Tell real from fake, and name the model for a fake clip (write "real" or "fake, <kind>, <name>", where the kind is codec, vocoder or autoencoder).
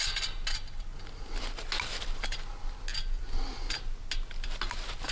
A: real